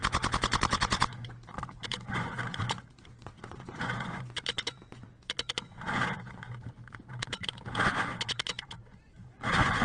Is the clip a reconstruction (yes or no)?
yes